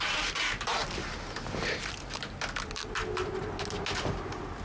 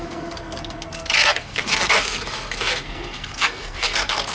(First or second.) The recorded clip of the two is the first